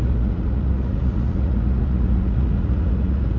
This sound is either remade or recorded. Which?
remade